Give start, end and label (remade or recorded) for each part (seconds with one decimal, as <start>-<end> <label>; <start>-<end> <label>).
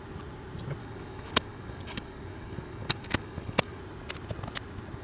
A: 0.0-0.8 recorded; 0.8-3.8 remade; 3.8-5.0 recorded